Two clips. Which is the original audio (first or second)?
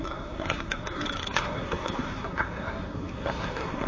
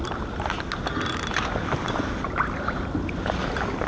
second